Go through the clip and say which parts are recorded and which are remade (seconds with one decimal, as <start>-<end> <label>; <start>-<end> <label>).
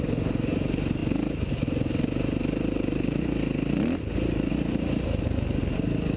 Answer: 0.0-6.2 recorded